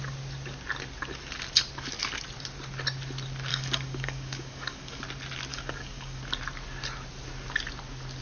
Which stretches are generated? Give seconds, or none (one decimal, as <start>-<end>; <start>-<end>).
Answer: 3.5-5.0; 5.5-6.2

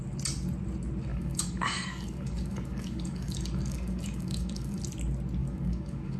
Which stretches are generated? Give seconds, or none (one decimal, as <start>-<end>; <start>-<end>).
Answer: 1.1-4.8; 5.4-6.2

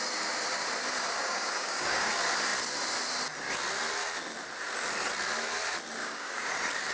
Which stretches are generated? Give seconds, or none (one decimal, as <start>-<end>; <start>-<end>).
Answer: 1.2-2.1; 6.0-6.5

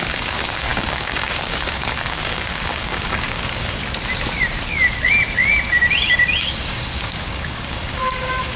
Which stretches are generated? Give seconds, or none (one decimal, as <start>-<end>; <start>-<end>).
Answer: 0.0-3.8; 6.4-8.6

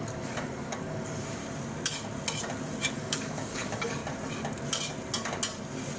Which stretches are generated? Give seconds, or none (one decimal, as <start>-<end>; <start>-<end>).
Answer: 0.0-1.4; 2.9-4.0